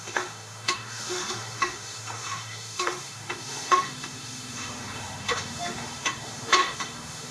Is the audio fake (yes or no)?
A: yes